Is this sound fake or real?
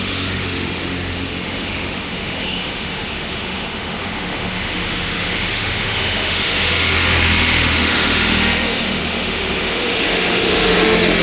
fake